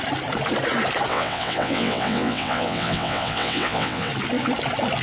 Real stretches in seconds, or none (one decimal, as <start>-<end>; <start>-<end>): 0.0-1.1; 4.1-5.0